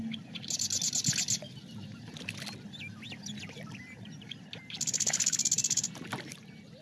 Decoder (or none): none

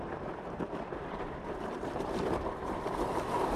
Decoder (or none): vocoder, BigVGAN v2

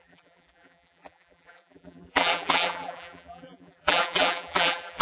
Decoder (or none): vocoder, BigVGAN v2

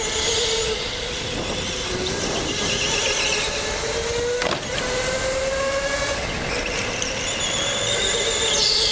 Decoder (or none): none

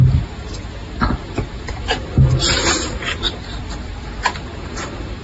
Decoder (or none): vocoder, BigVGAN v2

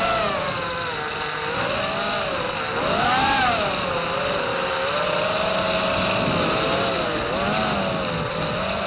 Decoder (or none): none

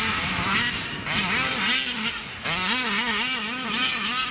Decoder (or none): none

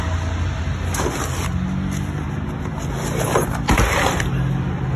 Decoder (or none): none